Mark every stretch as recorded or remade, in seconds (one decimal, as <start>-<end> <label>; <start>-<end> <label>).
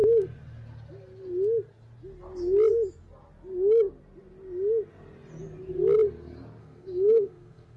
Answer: 0.0-6.6 recorded; 6.6-7.8 remade